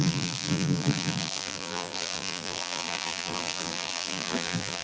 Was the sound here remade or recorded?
remade